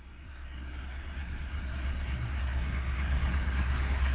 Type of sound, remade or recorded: remade